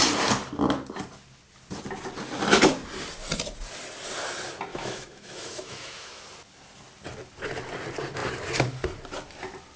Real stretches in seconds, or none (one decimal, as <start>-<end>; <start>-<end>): 0.0-4.7; 6.2-9.8